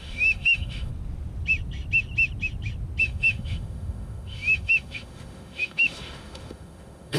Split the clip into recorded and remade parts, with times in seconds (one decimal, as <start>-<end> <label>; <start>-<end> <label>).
0.0-0.9 remade; 0.9-3.0 recorded; 3.0-7.2 remade